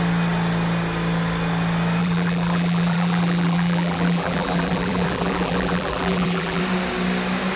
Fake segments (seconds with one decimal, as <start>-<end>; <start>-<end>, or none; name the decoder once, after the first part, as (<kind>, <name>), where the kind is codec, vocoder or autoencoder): 2.0-6.6 (vocoder, BigVGAN v2)